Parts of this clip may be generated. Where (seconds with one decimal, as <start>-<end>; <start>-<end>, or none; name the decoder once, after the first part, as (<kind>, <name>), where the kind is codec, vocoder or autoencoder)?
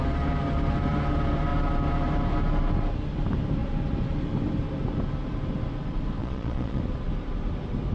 6.2-6.8 (vocoder, Vocos)